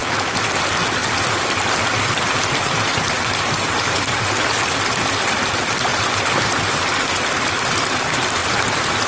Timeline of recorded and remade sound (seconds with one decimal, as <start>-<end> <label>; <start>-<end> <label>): 0.0-0.6 recorded; 0.6-5.9 remade; 5.9-7.7 recorded; 7.7-9.1 remade